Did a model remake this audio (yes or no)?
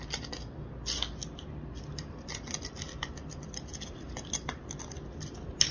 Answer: no